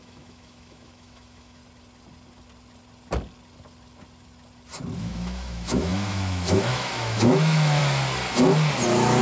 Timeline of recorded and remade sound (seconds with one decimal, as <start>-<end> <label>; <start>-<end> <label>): 0.0-1.6 remade; 1.6-5.0 recorded; 5.0-7.8 remade; 7.8-9.2 recorded